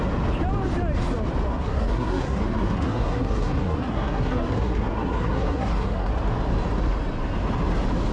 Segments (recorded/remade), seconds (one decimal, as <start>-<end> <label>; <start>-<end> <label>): 0.0-1.5 recorded; 1.5-6.1 remade; 6.1-8.1 recorded